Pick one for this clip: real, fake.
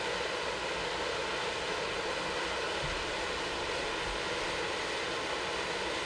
real